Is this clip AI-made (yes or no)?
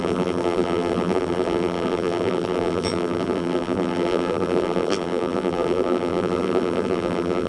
yes